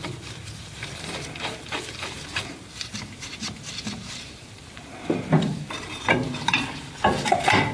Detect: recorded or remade remade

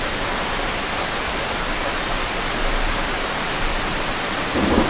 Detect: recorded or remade recorded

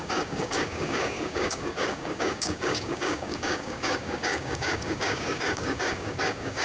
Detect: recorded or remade remade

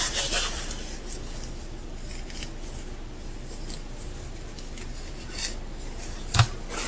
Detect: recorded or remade recorded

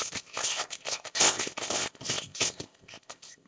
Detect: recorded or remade remade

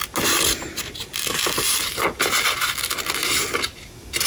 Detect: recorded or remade recorded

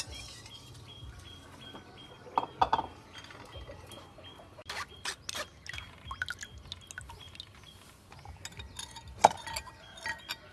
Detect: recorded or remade recorded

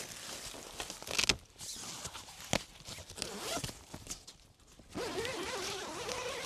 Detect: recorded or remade recorded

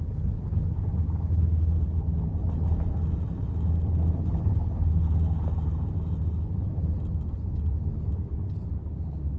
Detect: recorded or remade recorded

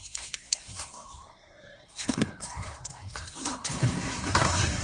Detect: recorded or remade remade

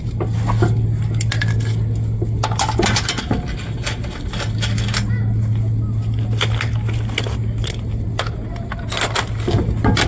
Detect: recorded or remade recorded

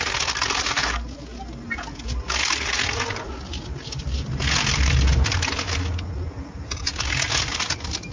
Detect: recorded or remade recorded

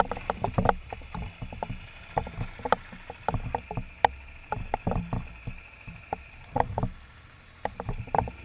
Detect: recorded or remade recorded